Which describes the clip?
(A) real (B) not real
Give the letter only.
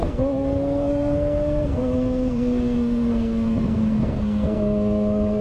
B